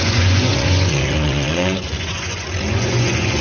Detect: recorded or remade remade